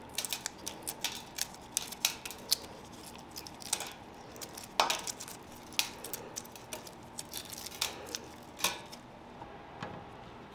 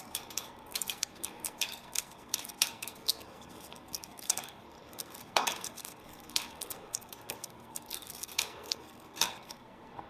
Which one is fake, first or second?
second